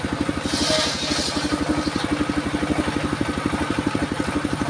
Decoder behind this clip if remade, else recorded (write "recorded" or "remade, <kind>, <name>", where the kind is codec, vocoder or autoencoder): recorded